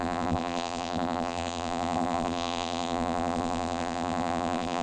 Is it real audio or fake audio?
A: fake